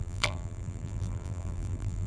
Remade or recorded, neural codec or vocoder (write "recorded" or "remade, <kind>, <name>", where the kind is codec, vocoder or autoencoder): remade, vocoder, BigVGAN v2